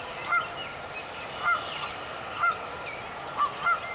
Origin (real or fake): real